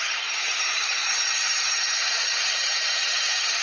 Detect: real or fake fake